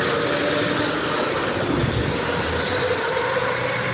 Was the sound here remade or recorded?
recorded